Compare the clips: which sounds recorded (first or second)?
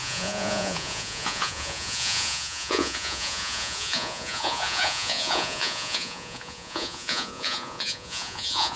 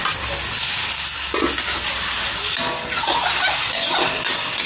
second